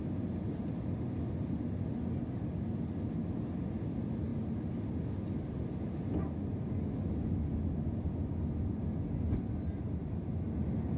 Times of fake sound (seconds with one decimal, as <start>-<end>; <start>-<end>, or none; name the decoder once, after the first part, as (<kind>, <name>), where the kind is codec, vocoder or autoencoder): none